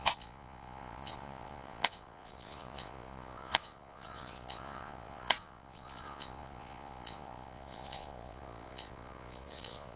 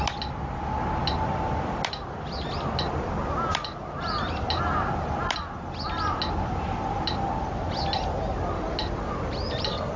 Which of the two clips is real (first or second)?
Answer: second